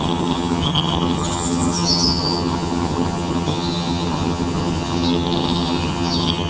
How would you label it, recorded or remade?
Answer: remade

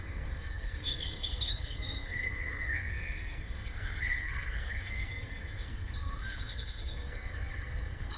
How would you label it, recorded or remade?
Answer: remade